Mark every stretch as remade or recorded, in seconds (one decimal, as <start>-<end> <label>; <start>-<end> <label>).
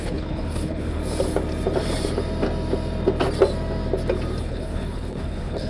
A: 0.0-1.0 remade; 1.0-4.4 recorded; 4.4-5.7 remade